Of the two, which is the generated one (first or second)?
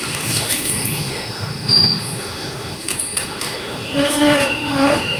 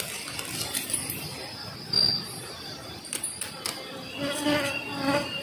first